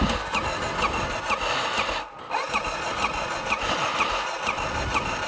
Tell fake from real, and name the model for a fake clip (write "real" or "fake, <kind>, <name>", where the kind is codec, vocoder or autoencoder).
real